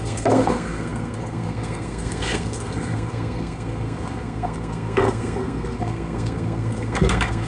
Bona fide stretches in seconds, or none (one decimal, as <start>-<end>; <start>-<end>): none